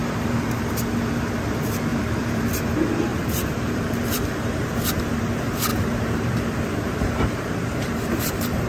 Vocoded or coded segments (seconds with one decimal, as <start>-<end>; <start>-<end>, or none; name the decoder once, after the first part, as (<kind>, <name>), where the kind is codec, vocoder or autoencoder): 0.0-0.8 (vocoder, BigVGAN v2); 1.9-2.5; 3.1-4.7; 5.7-8.7